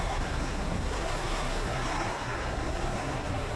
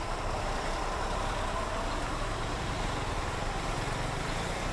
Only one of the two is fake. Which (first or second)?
first